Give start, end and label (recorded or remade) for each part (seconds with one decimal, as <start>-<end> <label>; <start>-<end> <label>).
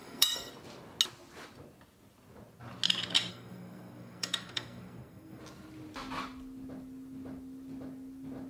0.0-0.5 remade; 0.5-3.3 recorded; 3.3-5.4 remade; 5.4-8.5 recorded